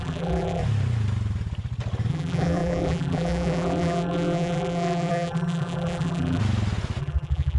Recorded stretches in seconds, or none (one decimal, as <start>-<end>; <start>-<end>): 0.6-2.1; 6.4-7.0